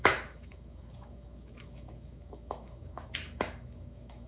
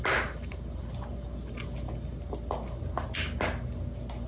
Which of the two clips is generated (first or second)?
first